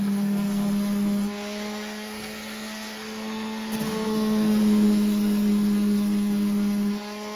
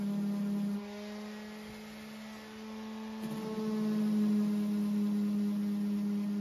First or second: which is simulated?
first